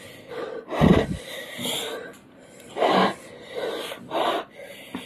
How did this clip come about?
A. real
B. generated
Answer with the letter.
A